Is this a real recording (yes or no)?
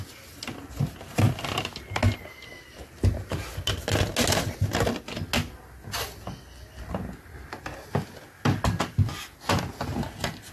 yes